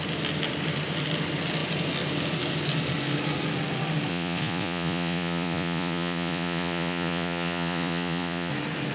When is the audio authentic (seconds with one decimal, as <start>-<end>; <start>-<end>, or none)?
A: 0.0-4.1; 8.5-8.9